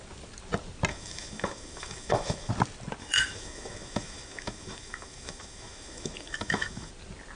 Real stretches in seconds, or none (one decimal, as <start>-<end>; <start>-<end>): 0.0-0.9; 2.5-3.0; 6.9-7.4